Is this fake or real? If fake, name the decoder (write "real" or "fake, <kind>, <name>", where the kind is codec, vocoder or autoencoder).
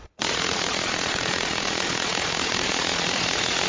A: fake, vocoder, Vocos